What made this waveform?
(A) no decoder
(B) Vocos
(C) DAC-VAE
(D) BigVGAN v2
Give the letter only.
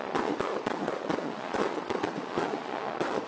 B